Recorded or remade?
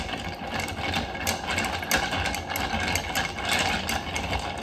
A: recorded